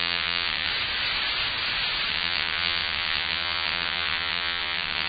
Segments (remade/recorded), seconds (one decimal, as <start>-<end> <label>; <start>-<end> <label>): 0.0-0.7 remade; 0.7-2.1 recorded; 2.1-5.1 remade